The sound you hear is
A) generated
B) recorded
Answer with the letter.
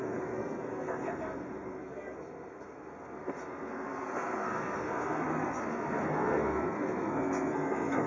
A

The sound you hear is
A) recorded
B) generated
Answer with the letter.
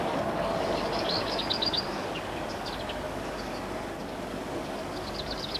B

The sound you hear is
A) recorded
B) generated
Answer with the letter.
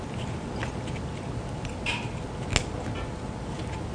A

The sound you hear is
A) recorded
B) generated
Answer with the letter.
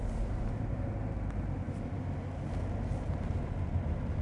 A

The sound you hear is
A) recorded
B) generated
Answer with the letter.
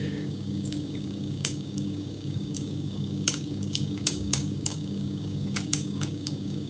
B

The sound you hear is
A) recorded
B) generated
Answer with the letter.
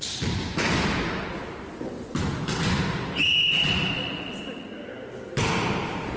A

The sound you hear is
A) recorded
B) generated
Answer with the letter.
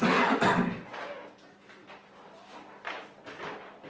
A